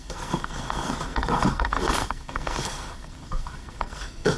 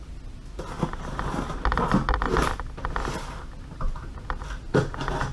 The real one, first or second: second